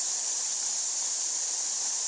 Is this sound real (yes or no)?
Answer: no